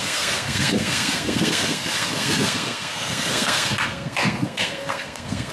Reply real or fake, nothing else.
fake